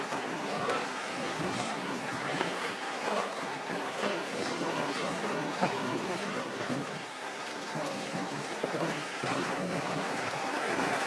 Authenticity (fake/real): fake